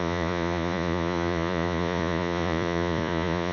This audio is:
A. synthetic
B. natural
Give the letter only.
A